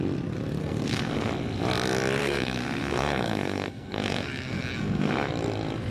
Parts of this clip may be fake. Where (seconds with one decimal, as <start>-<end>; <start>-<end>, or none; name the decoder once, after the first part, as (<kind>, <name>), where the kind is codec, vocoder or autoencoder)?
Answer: 0.6-1.3 (codec, SNAC); 2.2-5.3